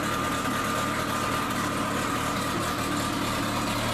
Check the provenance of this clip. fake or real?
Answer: real